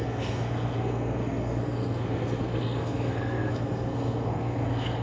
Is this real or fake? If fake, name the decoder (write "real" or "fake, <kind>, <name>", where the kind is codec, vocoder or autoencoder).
fake, codec, SNAC